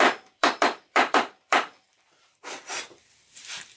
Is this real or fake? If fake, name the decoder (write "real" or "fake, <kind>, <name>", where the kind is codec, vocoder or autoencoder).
fake, vocoder, BigVGAN v2